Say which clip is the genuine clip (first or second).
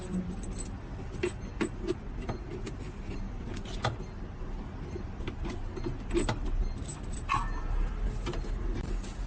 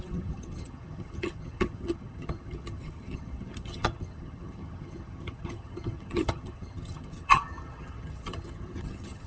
first